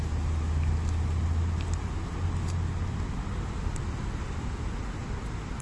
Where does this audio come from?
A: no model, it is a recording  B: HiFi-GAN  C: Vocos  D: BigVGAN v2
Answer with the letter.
A